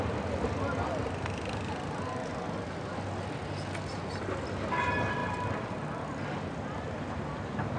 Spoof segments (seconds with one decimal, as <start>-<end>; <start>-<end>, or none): none